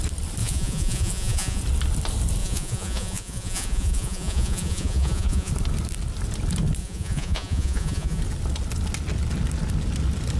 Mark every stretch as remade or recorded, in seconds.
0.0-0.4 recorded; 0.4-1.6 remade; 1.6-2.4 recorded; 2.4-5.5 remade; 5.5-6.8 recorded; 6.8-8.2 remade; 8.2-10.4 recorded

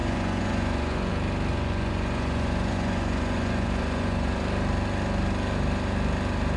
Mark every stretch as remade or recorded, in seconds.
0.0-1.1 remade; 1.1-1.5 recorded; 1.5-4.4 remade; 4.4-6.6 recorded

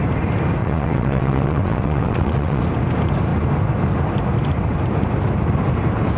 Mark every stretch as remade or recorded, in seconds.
0.0-0.6 recorded; 0.6-2.6 remade; 2.6-6.2 recorded

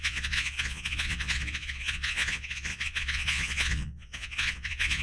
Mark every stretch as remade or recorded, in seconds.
0.0-5.0 remade